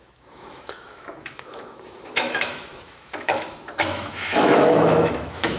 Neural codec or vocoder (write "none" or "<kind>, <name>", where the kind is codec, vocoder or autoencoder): autoencoder, DAC-VAE